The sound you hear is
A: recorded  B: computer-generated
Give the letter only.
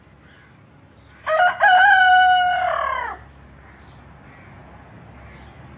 A